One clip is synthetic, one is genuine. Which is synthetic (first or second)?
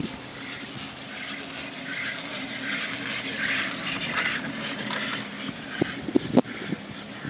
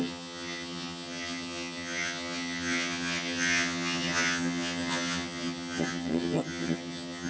second